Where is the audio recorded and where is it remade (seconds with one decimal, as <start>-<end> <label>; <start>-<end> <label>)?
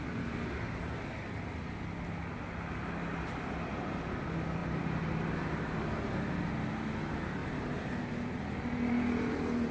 0.0-9.7 recorded